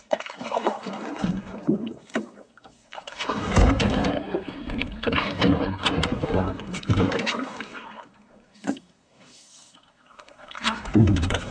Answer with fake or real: fake